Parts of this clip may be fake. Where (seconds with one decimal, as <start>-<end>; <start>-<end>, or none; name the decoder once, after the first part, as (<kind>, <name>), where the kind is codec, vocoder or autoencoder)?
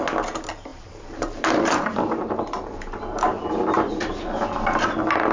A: 0.7-3.9 (vocoder, BigVGAN v2)